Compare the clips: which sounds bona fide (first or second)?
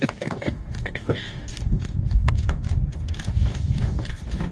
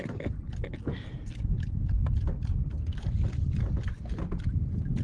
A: second